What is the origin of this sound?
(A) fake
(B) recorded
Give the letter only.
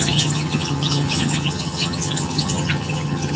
A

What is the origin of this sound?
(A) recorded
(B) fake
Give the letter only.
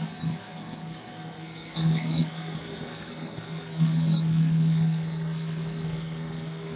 B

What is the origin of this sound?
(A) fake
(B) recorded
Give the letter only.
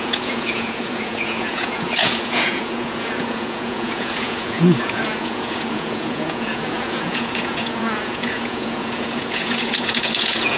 A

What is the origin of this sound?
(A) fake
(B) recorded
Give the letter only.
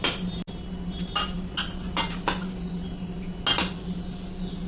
B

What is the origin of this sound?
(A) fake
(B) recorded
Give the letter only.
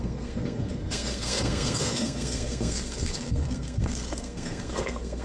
A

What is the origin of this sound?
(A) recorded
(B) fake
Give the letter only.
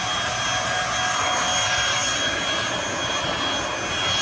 A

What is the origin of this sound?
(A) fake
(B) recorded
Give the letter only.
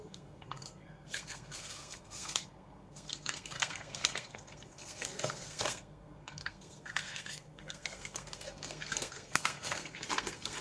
A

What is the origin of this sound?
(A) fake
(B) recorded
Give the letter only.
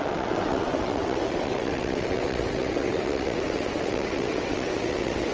A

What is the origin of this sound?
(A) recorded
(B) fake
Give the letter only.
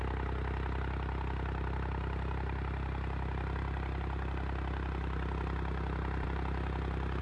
A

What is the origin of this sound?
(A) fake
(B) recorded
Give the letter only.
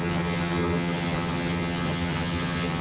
A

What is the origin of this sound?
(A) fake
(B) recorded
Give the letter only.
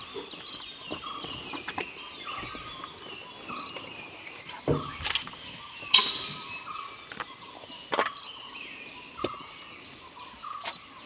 B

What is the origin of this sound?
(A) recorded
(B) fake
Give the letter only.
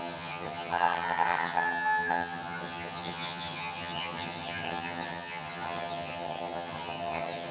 B